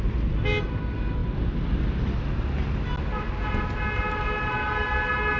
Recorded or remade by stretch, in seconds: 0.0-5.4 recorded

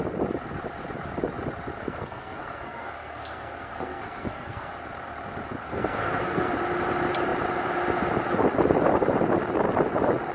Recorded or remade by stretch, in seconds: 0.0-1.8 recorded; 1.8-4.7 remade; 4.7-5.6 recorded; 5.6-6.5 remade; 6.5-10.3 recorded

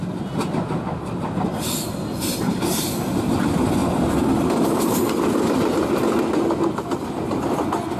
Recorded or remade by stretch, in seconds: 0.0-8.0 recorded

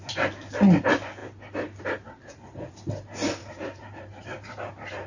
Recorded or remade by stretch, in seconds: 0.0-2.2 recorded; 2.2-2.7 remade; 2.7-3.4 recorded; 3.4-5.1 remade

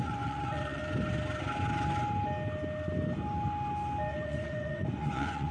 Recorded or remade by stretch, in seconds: 0.0-0.8 remade; 0.8-4.1 recorded; 4.1-5.5 remade